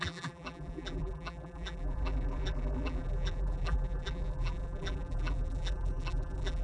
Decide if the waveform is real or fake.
fake